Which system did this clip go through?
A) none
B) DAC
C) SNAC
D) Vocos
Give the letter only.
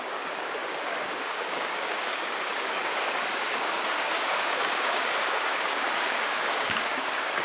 B